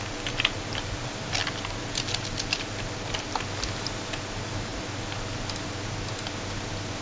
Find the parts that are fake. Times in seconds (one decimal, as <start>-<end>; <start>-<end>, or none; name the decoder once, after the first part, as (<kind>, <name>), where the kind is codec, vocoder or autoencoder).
none